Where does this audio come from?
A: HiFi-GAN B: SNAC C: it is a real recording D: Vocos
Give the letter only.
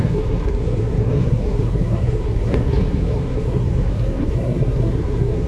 B